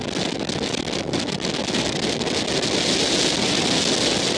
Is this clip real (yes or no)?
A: yes